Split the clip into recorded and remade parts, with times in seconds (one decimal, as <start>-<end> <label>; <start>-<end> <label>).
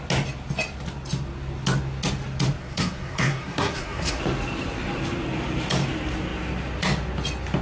0.0-2.6 recorded; 2.6-4.2 remade; 4.2-7.6 recorded